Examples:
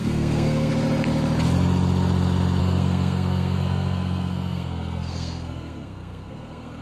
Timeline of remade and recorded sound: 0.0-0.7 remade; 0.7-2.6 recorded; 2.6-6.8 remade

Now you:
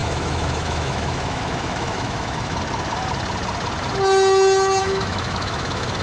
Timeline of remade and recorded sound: 0.0-2.6 remade; 2.6-4.8 recorded; 4.8-6.0 remade

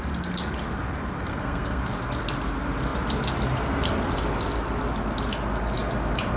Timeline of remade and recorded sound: 0.0-1.3 recorded; 1.3-1.8 remade; 1.8-6.4 recorded